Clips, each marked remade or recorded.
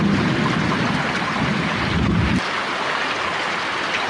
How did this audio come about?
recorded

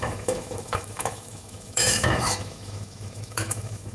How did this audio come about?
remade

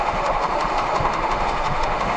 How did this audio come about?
remade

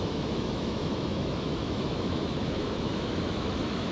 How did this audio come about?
remade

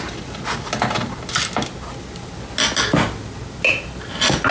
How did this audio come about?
recorded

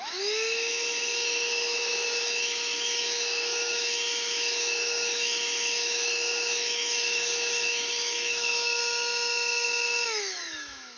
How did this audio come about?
remade